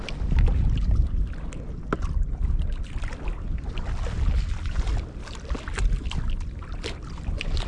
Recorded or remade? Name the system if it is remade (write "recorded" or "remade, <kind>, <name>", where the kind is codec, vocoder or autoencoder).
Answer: recorded